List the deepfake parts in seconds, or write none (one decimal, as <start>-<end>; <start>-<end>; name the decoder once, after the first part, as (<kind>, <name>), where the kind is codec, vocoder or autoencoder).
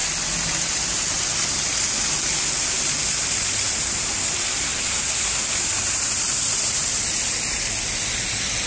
3.3-4.7 (vocoder, BigVGAN v2); 5.6-6.8